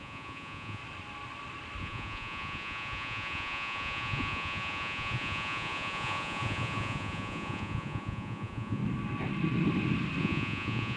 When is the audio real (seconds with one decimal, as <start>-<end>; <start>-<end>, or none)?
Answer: 0.8-1.8; 8.8-10.2